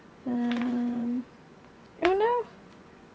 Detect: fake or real fake